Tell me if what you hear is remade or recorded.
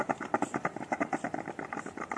recorded